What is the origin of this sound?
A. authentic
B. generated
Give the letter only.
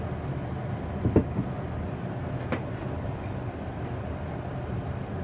A